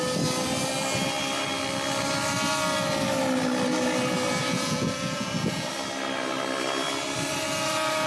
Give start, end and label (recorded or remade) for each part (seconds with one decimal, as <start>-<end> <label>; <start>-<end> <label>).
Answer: 0.0-4.4 recorded; 4.4-5.7 remade; 5.7-8.1 recorded